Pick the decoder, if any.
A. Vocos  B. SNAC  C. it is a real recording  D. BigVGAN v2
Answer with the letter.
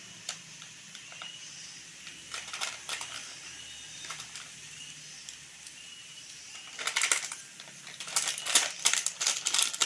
D